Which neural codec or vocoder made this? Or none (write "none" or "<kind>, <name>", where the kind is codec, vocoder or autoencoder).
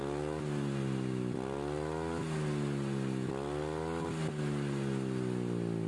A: none